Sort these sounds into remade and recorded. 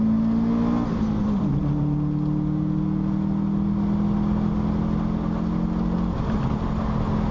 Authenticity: recorded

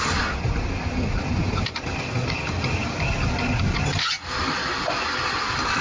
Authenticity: recorded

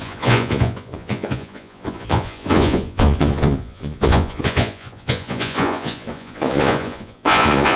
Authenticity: remade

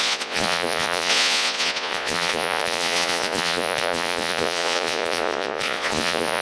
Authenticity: remade